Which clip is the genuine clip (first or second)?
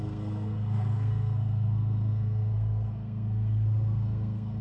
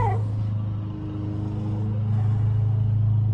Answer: second